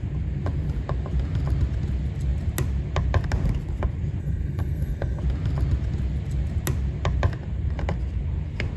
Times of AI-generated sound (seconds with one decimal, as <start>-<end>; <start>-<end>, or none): 4.2-5.2